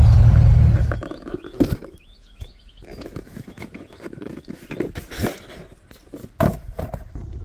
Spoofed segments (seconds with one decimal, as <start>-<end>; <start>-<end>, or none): 0.8-4.6; 6.2-6.8